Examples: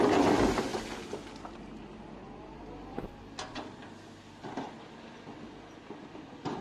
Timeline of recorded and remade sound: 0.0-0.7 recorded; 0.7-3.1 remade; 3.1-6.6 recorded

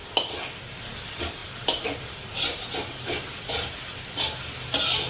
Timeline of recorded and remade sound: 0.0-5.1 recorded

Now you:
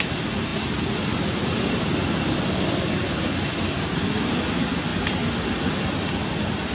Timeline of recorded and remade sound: 0.0-0.5 recorded; 0.5-1.8 remade; 1.8-6.7 recorded

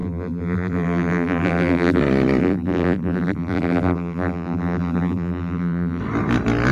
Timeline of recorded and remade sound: 0.0-2.0 remade; 2.0-2.4 recorded; 2.4-6.0 remade; 6.0-6.7 recorded